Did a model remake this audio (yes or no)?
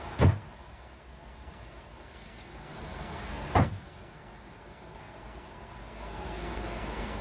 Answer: yes